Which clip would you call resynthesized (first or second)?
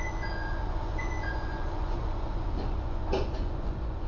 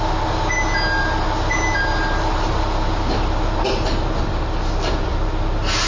first